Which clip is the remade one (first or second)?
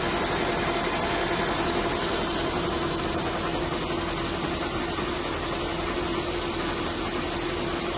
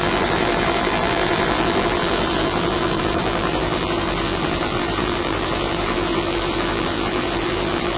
second